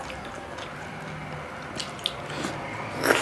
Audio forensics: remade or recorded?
recorded